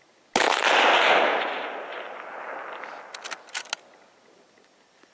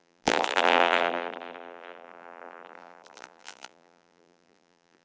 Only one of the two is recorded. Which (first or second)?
first